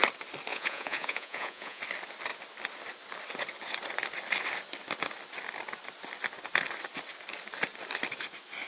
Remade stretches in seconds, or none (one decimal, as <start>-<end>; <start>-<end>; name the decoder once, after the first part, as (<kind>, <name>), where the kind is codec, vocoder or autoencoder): 0.5-1.8 (vocoder, Vocos)